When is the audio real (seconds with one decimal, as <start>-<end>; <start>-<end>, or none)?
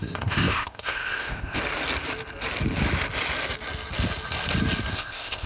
1.6-4.9